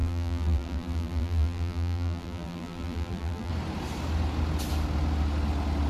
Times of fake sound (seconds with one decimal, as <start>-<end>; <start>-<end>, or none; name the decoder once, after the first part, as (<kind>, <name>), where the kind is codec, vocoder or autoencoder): 0.0-3.5 (vocoder, BigVGAN v2)